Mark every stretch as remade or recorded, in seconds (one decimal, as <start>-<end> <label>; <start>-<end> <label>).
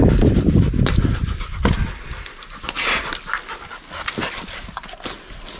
0.0-5.6 recorded